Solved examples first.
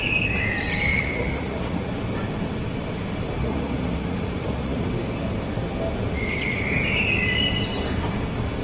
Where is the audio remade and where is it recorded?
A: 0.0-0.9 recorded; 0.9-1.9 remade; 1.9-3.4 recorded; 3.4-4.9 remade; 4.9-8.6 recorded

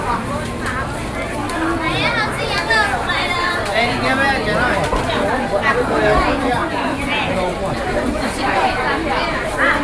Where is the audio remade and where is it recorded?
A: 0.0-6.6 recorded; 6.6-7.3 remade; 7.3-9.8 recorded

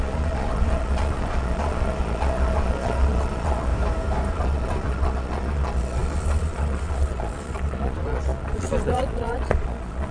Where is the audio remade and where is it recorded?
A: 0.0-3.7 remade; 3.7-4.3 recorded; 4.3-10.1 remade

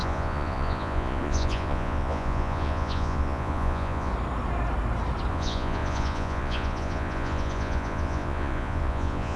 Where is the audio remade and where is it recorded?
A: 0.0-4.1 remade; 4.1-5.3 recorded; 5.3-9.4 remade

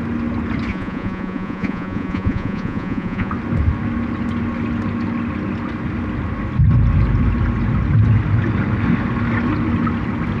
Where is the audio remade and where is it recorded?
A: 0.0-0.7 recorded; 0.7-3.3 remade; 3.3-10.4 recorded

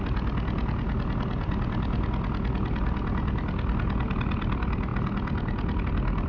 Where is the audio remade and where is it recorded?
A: 0.0-6.3 recorded

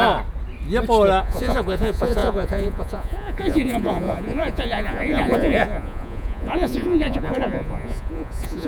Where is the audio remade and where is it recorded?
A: 0.0-1.2 recorded; 1.2-8.7 remade